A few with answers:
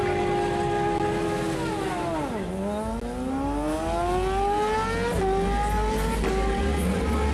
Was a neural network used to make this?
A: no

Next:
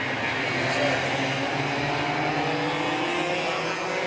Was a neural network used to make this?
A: no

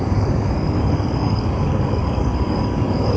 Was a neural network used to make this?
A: yes